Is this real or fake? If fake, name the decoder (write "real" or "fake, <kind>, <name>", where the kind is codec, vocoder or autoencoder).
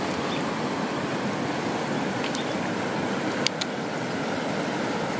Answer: real